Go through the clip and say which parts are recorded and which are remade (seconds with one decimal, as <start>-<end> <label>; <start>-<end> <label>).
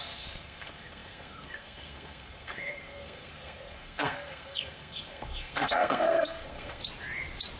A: 0.0-6.8 remade; 6.8-7.6 recorded